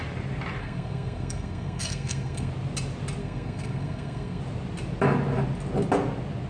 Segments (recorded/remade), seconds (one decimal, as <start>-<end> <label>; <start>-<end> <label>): 0.0-0.6 recorded; 0.6-2.5 remade; 2.5-3.2 recorded; 3.2-4.4 remade; 4.4-6.5 recorded